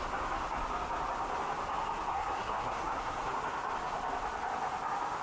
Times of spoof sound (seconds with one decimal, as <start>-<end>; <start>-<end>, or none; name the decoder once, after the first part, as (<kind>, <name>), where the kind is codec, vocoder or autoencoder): 2.1-3.3 (codec, SNAC)